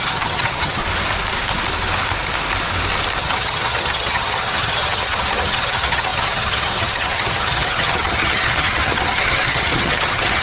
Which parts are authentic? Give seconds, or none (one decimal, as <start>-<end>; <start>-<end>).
0.8-3.2